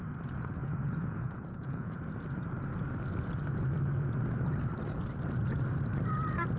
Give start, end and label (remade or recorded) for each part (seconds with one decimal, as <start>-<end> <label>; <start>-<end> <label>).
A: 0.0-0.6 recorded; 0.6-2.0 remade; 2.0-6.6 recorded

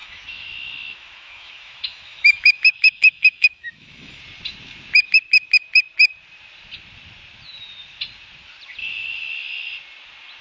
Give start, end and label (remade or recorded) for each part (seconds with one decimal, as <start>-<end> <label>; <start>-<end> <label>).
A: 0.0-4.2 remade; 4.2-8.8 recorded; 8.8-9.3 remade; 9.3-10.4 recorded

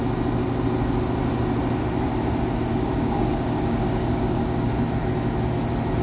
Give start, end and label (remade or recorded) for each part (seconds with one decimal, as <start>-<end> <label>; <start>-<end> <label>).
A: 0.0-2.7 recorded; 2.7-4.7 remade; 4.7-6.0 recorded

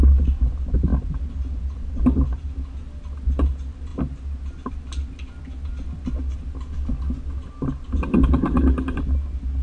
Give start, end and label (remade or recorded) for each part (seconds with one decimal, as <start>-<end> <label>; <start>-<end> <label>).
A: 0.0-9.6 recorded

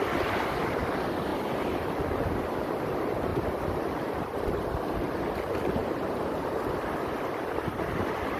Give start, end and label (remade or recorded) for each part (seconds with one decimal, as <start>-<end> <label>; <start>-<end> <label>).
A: 0.0-3.3 recorded; 3.3-5.3 remade; 5.3-5.8 recorded; 5.8-6.4 remade; 6.4-8.4 recorded

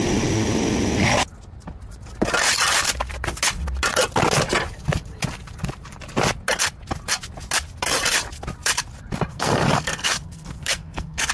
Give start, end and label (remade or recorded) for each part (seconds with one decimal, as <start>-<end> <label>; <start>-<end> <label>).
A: 0.0-9.3 recorded; 9.3-11.3 remade

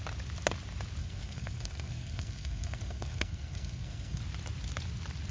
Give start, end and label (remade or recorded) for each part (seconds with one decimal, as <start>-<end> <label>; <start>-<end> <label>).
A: 0.0-1.0 recorded; 1.0-4.2 remade; 4.2-5.3 recorded

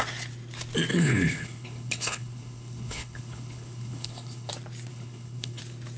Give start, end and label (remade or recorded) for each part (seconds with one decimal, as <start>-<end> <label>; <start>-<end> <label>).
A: 0.0-0.9 recorded; 0.9-4.5 remade; 4.5-4.9 recorded; 4.9-5.6 remade; 5.6-6.0 recorded